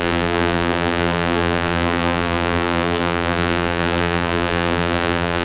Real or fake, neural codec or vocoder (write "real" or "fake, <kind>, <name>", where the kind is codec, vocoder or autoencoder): fake, vocoder, BigVGAN v2